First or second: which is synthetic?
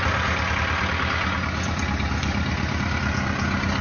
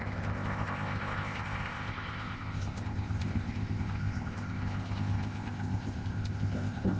second